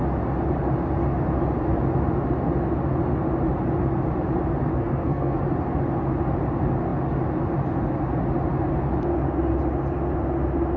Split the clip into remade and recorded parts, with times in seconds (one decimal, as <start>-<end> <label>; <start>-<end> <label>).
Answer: 0.0-4.7 recorded; 4.7-5.4 remade; 5.4-10.8 recorded